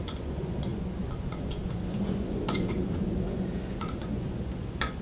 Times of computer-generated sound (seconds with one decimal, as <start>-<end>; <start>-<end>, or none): 0.0-5.0